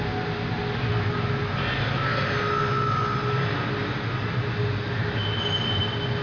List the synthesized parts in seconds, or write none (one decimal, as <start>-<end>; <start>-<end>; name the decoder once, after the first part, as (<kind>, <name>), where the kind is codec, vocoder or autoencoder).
none